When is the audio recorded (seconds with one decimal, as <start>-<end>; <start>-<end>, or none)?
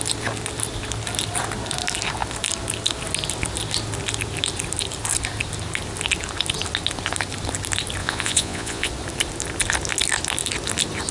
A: 0.0-8.0; 8.9-11.1